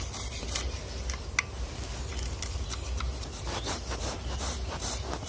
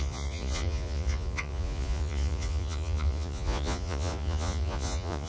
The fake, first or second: second